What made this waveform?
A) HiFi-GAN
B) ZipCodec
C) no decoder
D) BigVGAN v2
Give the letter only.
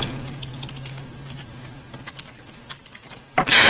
C